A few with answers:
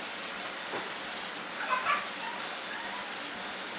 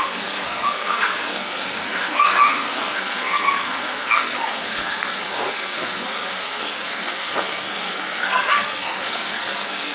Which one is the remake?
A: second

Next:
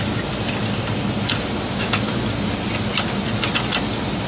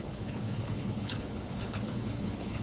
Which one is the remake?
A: second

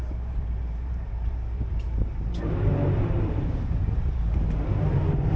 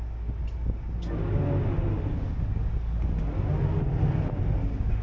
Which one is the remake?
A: first